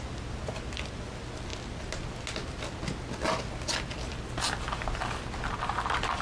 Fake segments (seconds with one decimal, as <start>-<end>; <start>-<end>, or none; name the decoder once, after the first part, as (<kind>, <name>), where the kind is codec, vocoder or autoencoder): none